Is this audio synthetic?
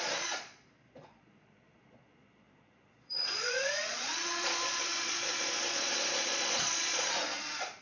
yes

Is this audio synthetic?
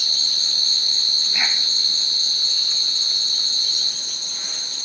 no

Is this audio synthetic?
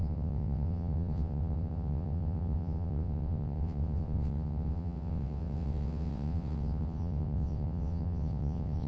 yes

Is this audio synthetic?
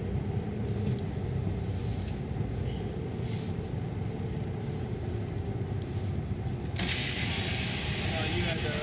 no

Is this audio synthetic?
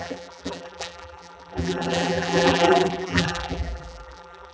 yes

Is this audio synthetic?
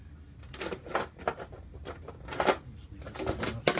no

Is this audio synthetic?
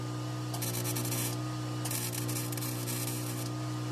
no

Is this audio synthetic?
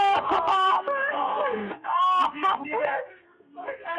yes